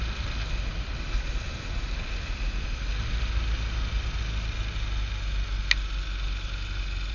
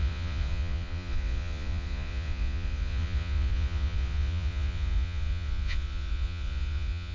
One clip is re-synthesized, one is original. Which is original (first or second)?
first